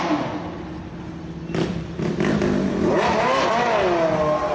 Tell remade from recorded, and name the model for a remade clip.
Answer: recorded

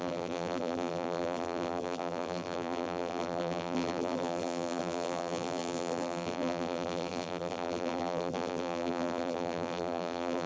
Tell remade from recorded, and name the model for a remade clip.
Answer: remade, vocoder, BigVGAN v2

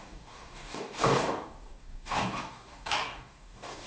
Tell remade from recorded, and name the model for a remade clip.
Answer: remade, codec, DAC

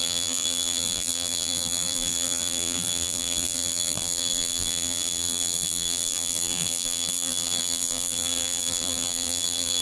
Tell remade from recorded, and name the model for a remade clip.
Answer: remade, vocoder, BigVGAN v2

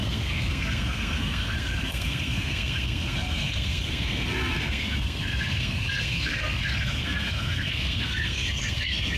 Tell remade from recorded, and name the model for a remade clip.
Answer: remade, codec, SNAC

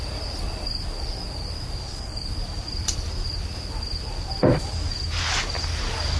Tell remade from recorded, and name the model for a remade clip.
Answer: recorded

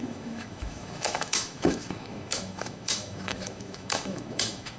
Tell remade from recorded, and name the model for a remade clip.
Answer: remade, autoencoder, DAC-VAE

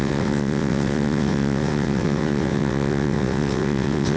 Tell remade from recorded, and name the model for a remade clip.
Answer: remade, vocoder, WaveNeXt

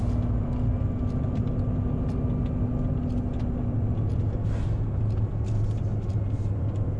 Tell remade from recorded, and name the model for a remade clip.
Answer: recorded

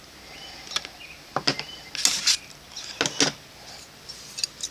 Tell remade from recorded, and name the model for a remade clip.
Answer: recorded